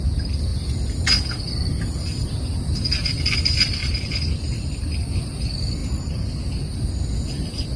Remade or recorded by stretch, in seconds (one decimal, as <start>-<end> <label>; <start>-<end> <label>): 0.0-3.8 recorded; 3.8-4.7 remade; 4.7-7.8 recorded